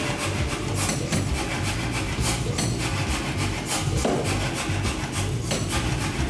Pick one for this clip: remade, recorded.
recorded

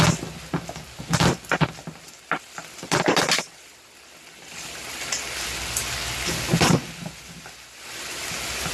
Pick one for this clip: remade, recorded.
recorded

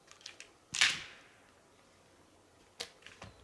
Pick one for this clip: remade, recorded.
recorded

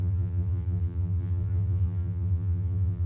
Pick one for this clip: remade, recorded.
remade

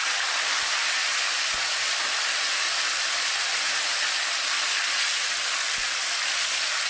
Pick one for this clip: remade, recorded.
recorded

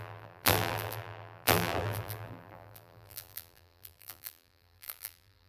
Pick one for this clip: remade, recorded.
remade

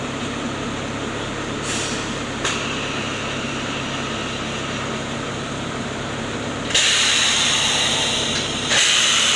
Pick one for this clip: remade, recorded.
remade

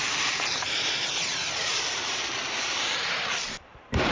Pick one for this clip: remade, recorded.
remade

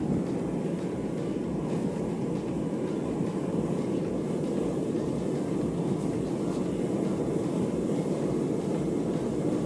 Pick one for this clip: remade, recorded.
recorded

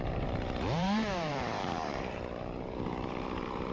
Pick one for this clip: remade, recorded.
remade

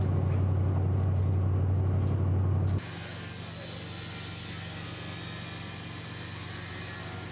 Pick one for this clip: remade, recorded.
recorded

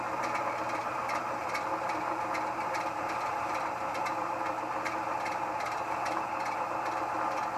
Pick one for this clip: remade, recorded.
remade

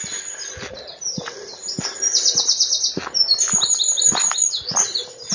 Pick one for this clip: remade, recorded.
recorded